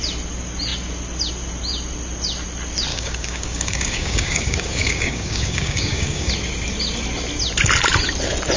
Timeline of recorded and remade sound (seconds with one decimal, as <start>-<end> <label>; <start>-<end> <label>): 0.0-2.9 recorded; 2.9-6.3 remade; 6.3-8.6 recorded